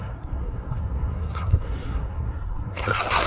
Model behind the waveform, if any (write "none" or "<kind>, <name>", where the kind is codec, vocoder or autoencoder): codec, SNAC